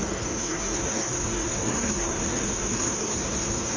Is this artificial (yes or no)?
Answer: yes